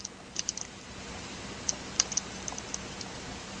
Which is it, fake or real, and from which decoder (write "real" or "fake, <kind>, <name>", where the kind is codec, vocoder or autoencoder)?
fake, vocoder, BigVGAN v2